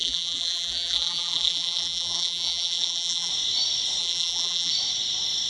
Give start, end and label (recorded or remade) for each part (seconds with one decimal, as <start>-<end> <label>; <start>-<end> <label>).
0.0-3.3 remade; 3.3-4.0 recorded; 4.0-4.7 remade; 4.7-5.5 recorded

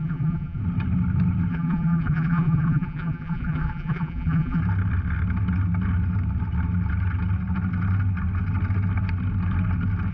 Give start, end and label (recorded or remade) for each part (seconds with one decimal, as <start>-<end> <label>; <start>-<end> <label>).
0.0-0.6 remade; 0.6-1.5 recorded; 1.5-4.6 remade; 4.6-10.1 recorded